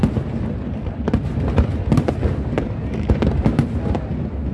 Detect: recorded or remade recorded